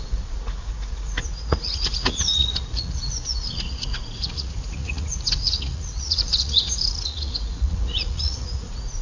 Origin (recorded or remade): remade